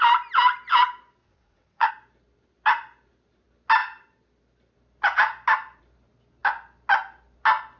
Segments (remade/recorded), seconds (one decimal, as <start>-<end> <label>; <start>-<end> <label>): 0.0-1.2 recorded; 1.2-1.9 remade; 1.9-7.8 recorded